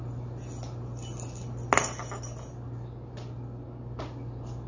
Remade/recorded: recorded